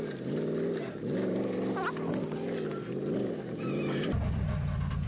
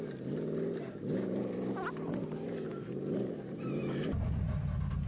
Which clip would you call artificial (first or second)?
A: second